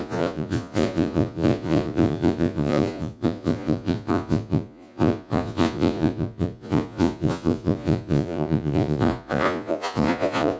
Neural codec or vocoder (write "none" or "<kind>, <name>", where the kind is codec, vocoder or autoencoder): vocoder, Vocos